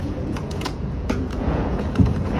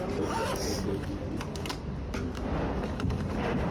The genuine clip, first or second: second